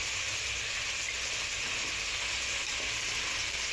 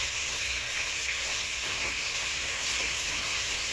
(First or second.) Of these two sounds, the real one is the first